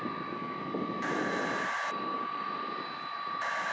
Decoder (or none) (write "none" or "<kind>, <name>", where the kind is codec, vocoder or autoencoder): none